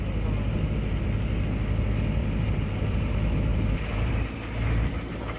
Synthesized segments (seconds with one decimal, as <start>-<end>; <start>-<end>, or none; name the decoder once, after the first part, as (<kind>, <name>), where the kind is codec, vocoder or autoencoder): 2.2-3.1 (vocoder, BigVGAN v2); 3.5-4.1